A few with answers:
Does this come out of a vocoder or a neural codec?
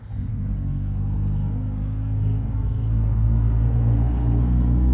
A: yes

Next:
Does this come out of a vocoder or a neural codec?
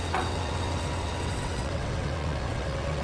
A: yes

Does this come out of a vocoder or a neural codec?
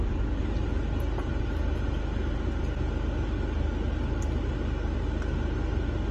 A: no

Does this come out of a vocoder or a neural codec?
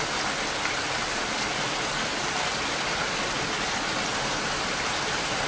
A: no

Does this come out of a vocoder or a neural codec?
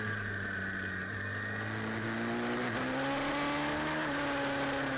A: no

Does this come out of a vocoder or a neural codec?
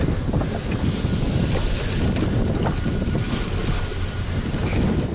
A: no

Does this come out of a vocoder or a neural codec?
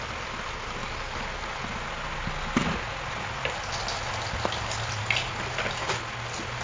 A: no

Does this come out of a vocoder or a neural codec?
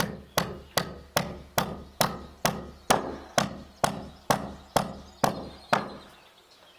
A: no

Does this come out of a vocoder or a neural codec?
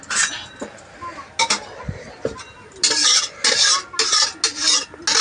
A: no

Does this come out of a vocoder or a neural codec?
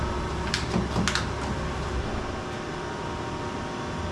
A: no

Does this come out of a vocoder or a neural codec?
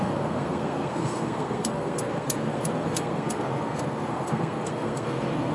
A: yes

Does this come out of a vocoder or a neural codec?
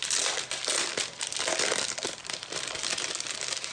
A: no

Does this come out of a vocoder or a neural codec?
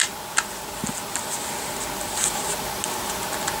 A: no